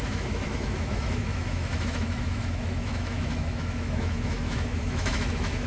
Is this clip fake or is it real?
fake